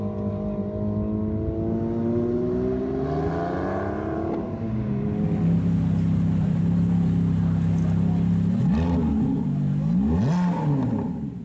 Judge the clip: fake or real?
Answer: real